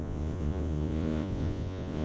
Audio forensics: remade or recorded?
remade